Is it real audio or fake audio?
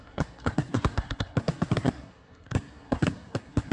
fake